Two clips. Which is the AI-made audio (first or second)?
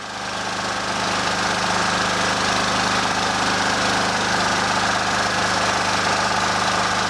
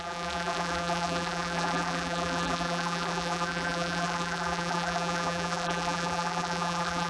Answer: second